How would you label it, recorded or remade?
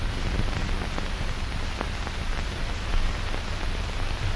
recorded